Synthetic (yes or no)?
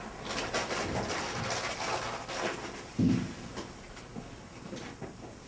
no